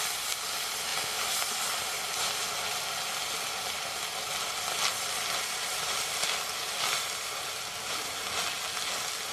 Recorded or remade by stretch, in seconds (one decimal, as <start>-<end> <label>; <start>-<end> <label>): 0.0-9.3 recorded